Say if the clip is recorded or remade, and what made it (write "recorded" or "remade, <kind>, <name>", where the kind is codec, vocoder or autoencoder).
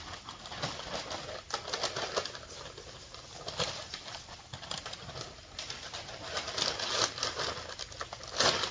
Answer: recorded